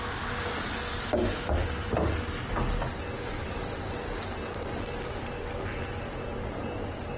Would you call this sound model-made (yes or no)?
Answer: no